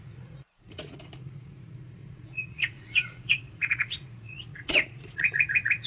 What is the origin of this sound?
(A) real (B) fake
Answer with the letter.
B